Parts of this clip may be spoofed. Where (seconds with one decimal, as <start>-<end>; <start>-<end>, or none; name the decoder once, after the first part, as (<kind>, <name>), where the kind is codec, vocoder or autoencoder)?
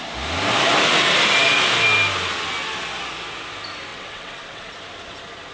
3.9-4.7 (vocoder, WaveNeXt)